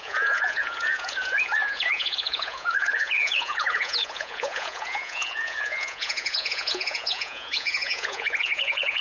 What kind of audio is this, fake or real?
fake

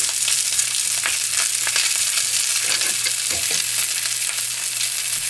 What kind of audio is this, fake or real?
real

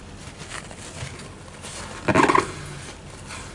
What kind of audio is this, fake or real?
real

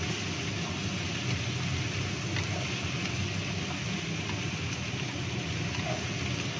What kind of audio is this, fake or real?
real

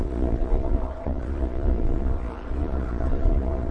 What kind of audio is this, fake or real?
fake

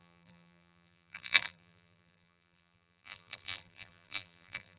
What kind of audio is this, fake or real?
fake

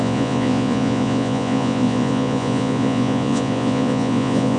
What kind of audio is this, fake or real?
fake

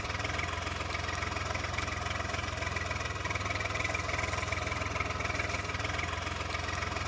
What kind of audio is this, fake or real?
real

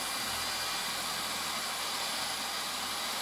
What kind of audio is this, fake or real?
real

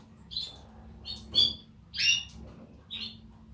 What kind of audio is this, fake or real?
real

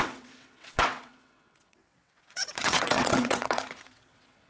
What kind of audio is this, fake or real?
fake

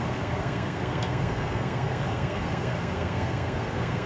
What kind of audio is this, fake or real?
fake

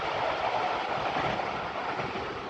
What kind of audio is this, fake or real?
real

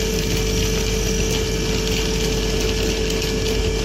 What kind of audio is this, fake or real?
real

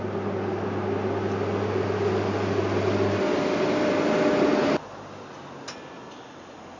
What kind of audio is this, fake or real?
real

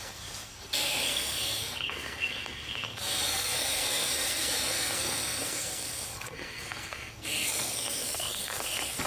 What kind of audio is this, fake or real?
fake